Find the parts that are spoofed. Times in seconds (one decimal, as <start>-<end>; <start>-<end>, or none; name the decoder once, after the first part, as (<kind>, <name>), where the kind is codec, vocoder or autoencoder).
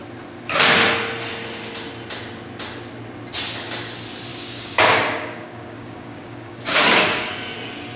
4.3-7.3 (codec, DAC)